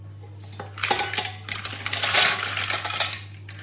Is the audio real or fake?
real